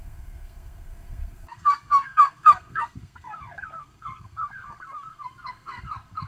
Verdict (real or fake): fake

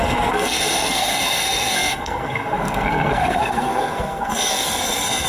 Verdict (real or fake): fake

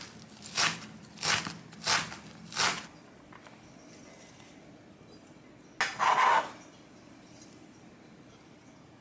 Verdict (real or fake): real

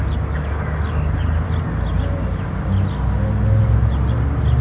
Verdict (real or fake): real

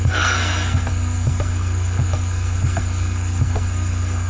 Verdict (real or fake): fake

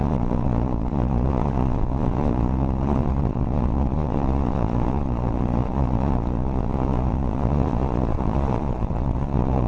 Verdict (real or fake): fake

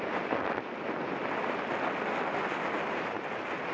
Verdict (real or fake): real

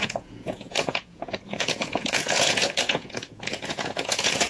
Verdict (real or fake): fake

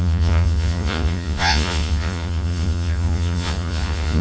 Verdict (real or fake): fake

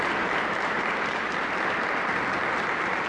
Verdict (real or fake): real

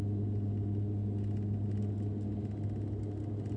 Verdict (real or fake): real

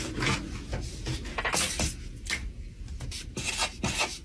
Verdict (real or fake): real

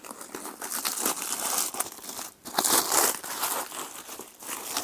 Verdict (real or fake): real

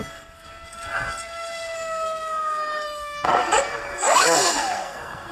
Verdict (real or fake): fake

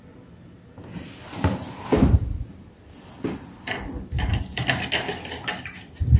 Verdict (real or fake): real